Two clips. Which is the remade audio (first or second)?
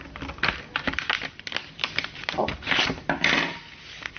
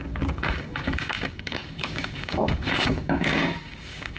second